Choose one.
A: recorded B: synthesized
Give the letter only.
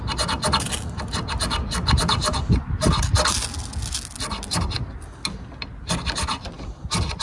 A